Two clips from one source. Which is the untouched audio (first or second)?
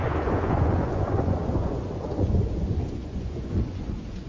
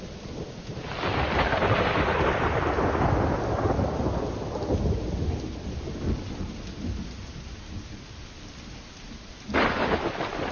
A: second